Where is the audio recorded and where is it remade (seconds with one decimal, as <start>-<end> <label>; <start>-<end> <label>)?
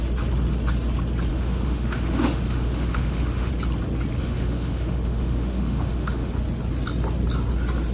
0.0-1.3 recorded; 1.3-3.5 remade; 3.5-4.2 recorded; 4.2-6.3 remade; 6.3-7.9 recorded